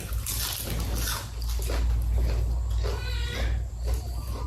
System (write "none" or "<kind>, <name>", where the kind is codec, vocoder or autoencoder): none